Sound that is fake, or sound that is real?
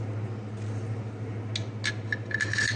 real